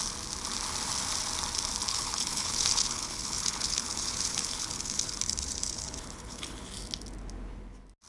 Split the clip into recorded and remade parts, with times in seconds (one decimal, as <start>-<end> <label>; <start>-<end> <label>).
0.0-1.9 recorded; 1.9-6.7 remade; 6.7-8.1 recorded

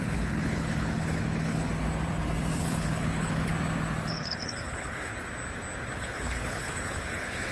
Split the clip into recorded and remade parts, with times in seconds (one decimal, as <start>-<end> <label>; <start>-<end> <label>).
0.0-1.7 remade; 1.7-2.6 recorded; 2.6-3.5 remade; 3.5-4.1 recorded; 4.1-5.1 remade; 5.1-6.0 recorded; 6.0-7.5 remade

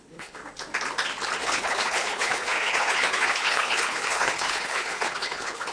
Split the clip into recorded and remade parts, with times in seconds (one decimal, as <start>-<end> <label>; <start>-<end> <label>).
0.0-0.4 remade; 0.4-1.4 recorded; 1.4-5.7 remade

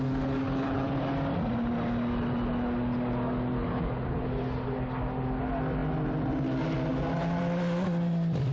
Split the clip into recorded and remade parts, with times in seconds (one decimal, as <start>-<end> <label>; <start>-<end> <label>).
0.0-0.4 recorded; 0.4-1.0 remade; 1.0-3.6 recorded; 3.6-4.2 remade; 4.2-8.5 recorded

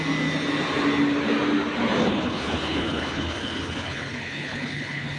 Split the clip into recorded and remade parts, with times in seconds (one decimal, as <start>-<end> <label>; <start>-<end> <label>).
0.0-2.0 recorded; 2.0-5.2 remade

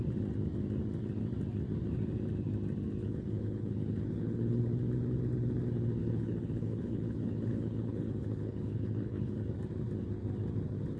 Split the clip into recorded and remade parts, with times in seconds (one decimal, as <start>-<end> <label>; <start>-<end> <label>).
0.0-3.0 recorded; 3.0-4.6 remade; 4.6-6.0 recorded; 6.0-9.4 remade; 9.4-11.0 recorded